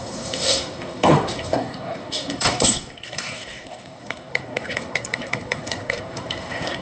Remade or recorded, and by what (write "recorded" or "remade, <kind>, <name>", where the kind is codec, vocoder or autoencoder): remade, codec, SNAC